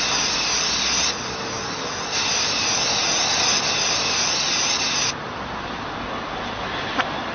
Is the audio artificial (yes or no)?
no